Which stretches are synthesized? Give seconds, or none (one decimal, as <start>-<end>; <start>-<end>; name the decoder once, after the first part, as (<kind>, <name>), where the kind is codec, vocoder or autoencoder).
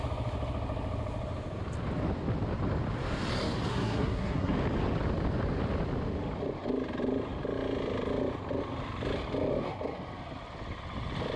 3.7-4.5 (codec, SNAC)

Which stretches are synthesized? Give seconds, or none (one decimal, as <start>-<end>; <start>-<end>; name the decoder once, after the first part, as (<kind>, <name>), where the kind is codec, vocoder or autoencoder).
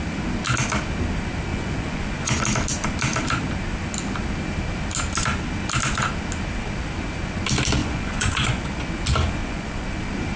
1.5-2.4 (vocoder, Vocos); 7.8-8.8; 9.4-10.0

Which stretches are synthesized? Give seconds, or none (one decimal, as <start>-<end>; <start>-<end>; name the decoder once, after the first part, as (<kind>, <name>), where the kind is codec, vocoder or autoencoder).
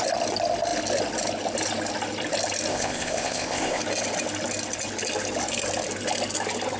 2.7-3.8 (codec, ZipCodec)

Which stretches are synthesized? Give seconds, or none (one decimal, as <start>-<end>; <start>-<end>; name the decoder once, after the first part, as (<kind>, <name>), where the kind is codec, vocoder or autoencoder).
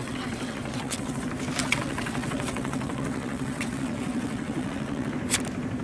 0.0-1.2 (vocoder, WaveNeXt); 1.6-5.1